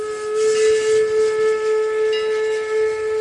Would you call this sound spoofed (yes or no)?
no